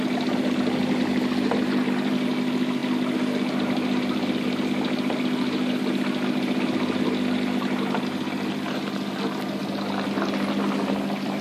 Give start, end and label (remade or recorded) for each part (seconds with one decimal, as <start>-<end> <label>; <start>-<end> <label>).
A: 0.0-11.4 recorded